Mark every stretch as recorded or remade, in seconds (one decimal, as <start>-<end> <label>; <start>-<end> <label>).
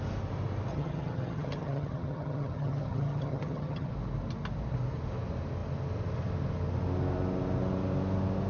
0.0-0.7 recorded; 0.7-3.9 remade; 3.9-8.5 recorded